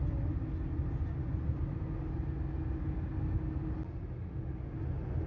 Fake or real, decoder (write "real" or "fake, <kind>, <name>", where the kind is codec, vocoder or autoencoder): real